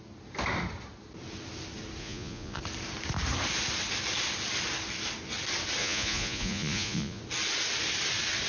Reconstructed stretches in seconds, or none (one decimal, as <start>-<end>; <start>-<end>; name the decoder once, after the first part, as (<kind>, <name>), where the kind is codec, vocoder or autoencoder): 2.0-2.6 (vocoder, Vocos); 5.8-7.2